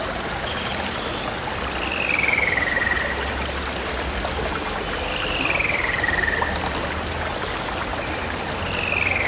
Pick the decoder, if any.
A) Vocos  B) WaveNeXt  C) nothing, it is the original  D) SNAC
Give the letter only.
C